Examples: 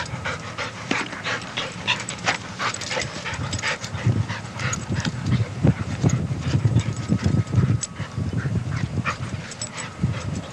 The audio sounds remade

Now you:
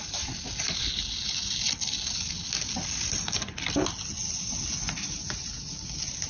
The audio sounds recorded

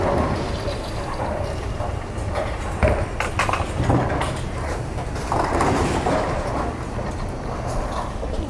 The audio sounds recorded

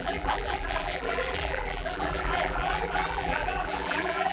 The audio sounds remade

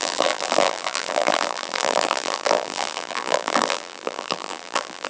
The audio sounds remade